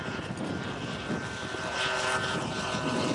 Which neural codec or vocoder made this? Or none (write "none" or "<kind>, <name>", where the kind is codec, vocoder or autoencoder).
none